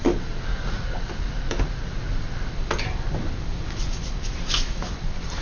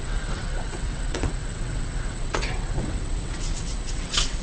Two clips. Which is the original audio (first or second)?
first